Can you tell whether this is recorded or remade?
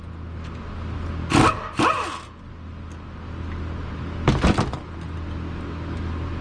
recorded